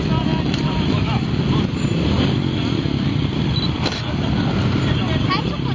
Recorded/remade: recorded